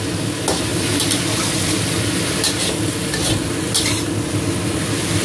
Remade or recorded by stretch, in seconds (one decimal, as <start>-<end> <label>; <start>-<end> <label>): 0.0-5.2 recorded